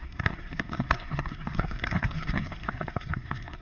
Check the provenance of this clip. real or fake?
fake